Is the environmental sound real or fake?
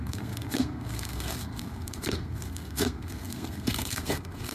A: fake